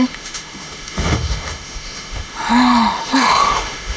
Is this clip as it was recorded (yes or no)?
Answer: no